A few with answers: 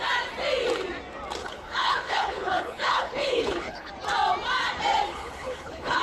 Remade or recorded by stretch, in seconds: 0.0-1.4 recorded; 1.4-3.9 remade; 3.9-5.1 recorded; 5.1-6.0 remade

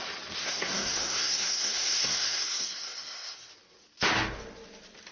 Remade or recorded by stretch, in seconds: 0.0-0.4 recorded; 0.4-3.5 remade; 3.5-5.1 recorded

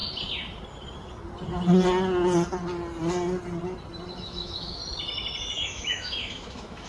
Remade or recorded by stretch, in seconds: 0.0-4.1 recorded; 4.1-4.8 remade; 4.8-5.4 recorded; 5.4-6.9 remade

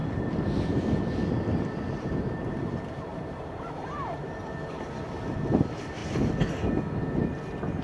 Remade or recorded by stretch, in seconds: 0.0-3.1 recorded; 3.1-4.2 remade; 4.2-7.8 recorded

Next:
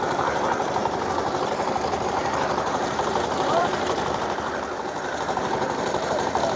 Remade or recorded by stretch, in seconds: 0.0-6.6 remade